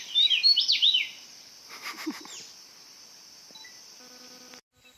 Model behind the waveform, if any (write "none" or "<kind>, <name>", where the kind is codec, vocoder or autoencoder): vocoder, BigVGAN v2